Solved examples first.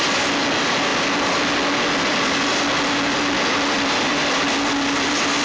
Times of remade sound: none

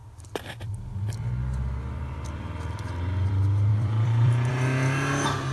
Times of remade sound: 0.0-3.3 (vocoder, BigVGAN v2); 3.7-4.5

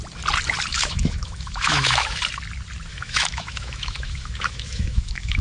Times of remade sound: 0.7-2.2 (autoencoder, DAC-VAE); 2.9-5.4

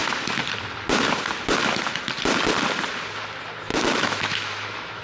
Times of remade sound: 3.7-5.0 (autoencoder, DAC-VAE)

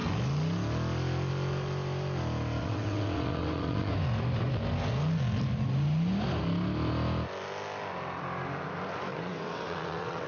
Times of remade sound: 2.6-3.9 (vocoder, WaveNeXt); 9.1-10.3